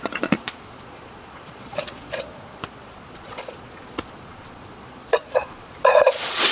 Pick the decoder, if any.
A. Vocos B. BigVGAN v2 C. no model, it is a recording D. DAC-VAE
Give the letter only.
A